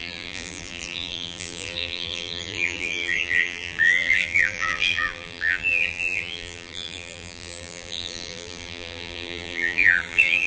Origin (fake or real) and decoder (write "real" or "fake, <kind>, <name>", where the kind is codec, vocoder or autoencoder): fake, vocoder, BigVGAN v2